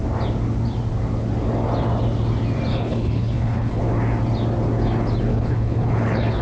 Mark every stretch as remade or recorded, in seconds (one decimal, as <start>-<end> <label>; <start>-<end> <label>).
0.0-2.7 recorded; 2.7-3.8 remade; 3.8-5.3 recorded; 5.3-6.4 remade